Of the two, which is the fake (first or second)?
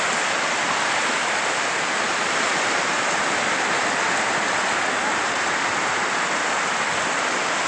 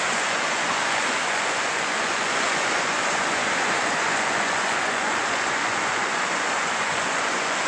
second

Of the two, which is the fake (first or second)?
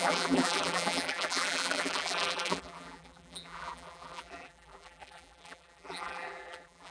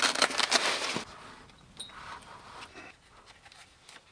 first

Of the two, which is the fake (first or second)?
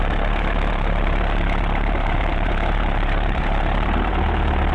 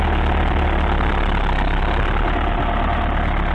first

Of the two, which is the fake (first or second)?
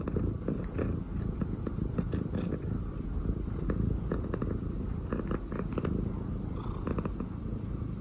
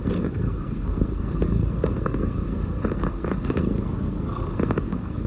second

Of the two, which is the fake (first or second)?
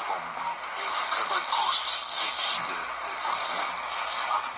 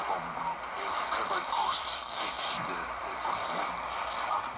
second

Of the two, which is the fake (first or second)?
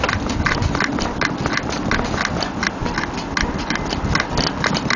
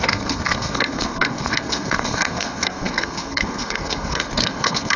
second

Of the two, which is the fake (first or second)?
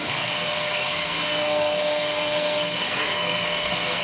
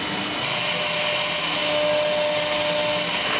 first